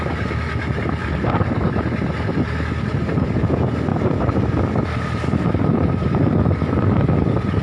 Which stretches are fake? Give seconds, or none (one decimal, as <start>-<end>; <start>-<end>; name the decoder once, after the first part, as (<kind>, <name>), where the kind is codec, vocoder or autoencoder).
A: 1.0-1.5 (vocoder, BigVGAN v2); 2.9-3.5